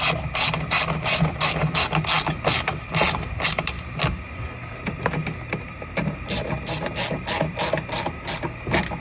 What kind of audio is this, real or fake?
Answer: real